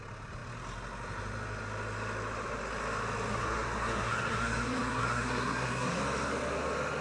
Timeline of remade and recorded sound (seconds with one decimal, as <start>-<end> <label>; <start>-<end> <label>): 0.0-3.3 recorded; 3.3-6.0 remade; 6.0-7.0 recorded